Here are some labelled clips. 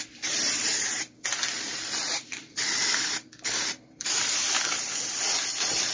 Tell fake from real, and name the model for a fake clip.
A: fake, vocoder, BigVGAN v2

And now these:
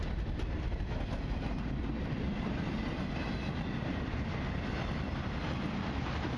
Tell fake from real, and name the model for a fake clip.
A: real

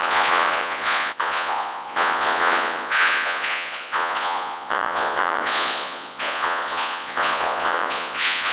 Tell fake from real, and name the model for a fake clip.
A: fake, vocoder, Vocos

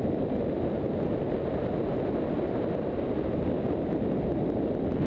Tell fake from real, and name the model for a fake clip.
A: real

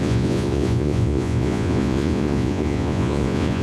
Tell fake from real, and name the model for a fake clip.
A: fake, vocoder, Vocos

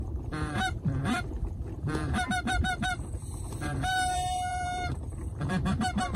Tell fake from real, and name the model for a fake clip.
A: fake, vocoder, BigVGAN v2